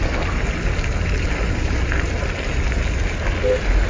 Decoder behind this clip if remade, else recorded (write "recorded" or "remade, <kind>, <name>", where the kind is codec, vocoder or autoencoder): recorded